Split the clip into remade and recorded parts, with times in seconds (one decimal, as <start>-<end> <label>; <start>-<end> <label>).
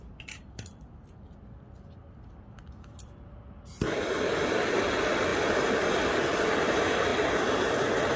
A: 0.0-8.2 recorded